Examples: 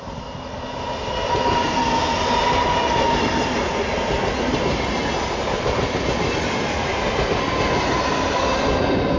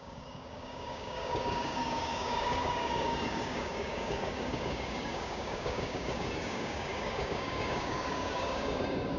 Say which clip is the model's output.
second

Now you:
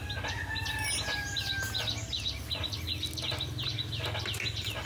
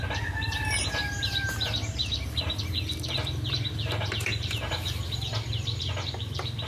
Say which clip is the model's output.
second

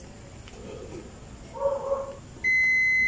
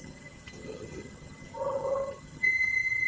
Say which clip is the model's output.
second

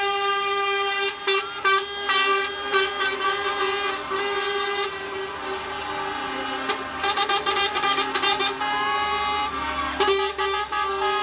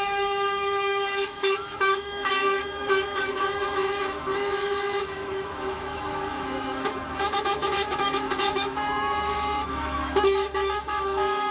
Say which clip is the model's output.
second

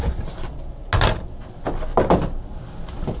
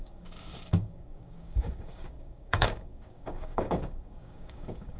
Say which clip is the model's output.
second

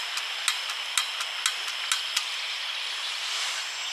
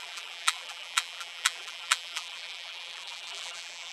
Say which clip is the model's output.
second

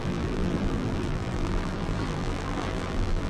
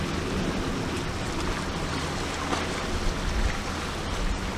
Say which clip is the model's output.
first